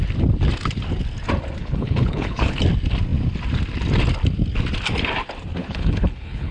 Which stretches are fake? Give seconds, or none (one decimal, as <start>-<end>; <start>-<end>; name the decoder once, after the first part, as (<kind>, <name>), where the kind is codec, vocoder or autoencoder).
1.6-2.6 (codec, HILCodec); 5.6-6.5